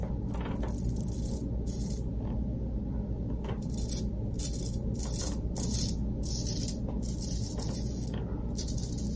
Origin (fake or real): real